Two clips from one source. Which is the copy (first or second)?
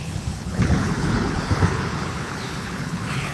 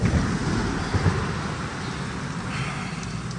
first